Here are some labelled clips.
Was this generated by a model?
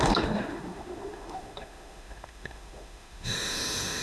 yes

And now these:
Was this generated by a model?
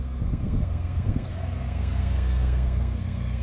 yes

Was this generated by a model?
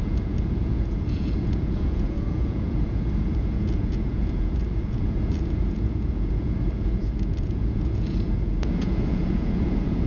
yes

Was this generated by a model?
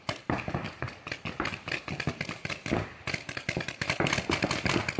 no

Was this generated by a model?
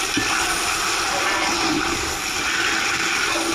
no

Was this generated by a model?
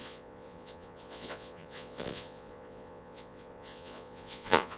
yes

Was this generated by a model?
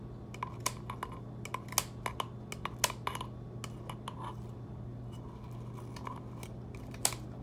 no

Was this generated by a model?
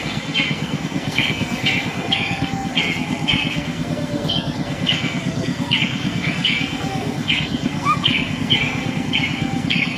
yes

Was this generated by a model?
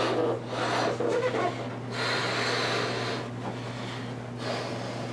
no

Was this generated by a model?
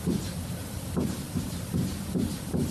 yes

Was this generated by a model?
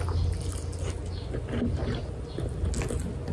no